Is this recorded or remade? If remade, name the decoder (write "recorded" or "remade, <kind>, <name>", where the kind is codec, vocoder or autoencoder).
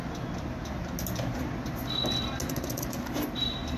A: recorded